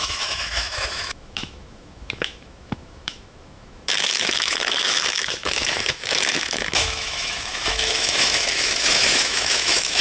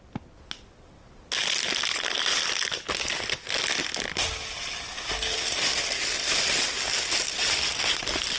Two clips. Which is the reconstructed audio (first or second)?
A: first